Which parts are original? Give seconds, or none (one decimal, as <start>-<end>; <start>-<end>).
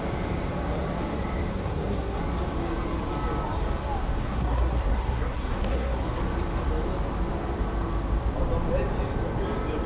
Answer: 0.0-1.5; 2.2-4.2; 6.2-9.9